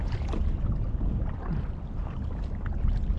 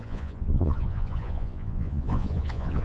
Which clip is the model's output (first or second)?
second